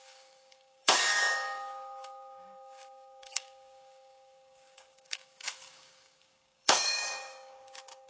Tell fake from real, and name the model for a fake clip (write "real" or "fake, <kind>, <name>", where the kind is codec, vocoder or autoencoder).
fake, codec, DAC